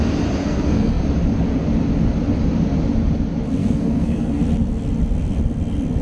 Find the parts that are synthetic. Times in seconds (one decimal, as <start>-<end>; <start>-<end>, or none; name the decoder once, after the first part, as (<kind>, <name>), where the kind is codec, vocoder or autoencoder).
0.4-1.0 (codec, SNAC); 3.6-4.4